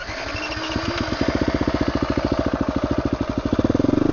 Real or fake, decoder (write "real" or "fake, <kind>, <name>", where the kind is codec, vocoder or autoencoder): real